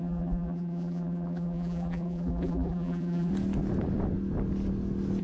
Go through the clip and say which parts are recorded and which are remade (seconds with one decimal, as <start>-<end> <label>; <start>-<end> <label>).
0.0-3.3 remade; 3.3-5.2 recorded

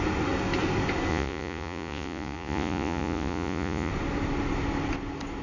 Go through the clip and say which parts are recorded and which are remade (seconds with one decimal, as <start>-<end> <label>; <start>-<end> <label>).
0.0-1.1 recorded; 1.1-3.9 remade; 3.9-5.4 recorded

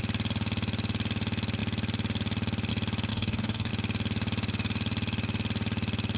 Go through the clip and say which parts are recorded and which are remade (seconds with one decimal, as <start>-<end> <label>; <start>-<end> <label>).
0.0-3.1 recorded; 3.1-3.7 remade; 3.7-6.2 recorded

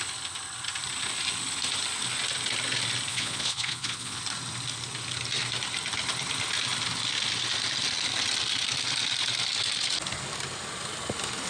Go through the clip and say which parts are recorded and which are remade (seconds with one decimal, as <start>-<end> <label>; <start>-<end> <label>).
0.0-3.1 recorded; 3.1-4.2 remade; 4.2-11.5 recorded

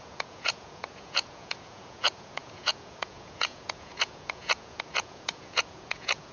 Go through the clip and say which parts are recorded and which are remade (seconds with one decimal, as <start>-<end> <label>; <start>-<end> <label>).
0.0-6.3 remade

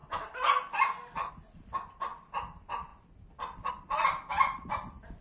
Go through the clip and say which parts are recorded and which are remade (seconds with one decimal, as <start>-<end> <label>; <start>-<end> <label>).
0.0-5.2 recorded

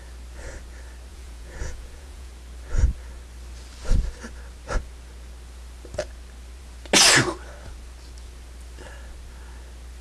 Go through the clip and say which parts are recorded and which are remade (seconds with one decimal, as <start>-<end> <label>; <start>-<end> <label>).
0.0-1.1 recorded; 1.1-2.3 remade; 2.3-10.0 recorded

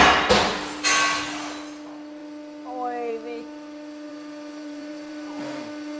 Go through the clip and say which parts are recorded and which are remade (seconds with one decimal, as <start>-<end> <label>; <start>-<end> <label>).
0.0-4.1 recorded; 4.1-5.4 remade; 5.4-6.0 recorded